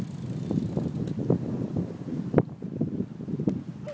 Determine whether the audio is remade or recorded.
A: recorded